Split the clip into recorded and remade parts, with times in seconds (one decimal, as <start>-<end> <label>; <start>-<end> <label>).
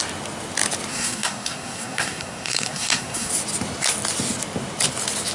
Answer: 0.0-0.9 recorded; 0.9-3.3 remade; 3.3-5.3 recorded